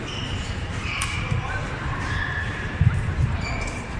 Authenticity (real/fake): fake